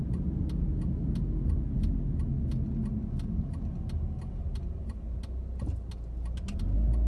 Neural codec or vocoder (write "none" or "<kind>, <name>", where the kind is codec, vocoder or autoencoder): none